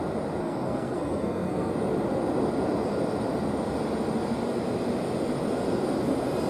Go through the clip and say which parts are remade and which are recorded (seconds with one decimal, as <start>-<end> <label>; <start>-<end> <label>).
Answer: 0.0-0.4 recorded; 0.4-1.7 remade; 1.7-6.5 recorded